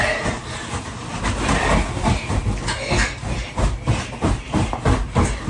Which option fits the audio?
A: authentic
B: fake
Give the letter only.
A